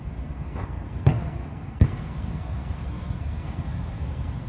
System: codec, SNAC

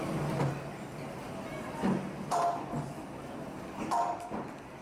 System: none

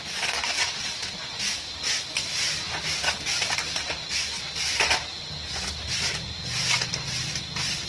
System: none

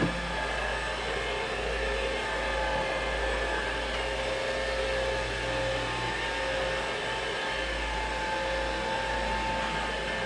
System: none